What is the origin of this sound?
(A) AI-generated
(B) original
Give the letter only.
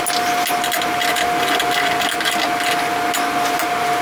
B